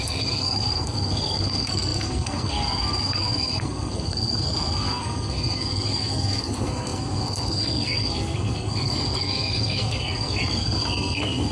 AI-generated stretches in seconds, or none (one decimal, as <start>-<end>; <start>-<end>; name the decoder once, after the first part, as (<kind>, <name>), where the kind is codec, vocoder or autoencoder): 0.0-11.5 (codec, SNAC)